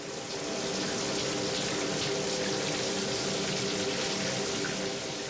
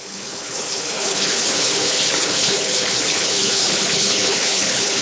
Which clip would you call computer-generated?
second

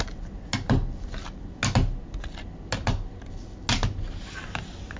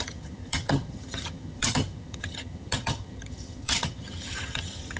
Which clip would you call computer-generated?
second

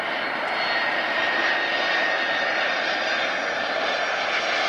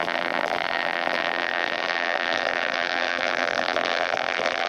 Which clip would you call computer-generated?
second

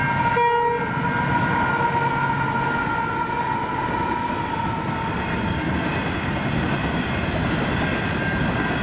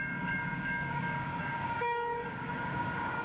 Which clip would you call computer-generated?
second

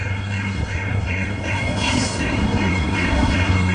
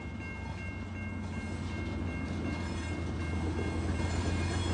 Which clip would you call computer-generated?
first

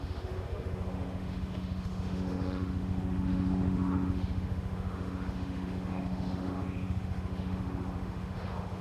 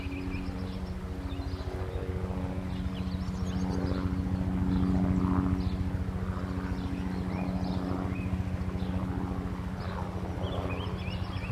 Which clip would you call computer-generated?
first